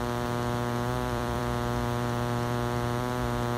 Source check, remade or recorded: remade